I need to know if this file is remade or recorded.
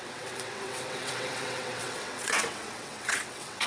remade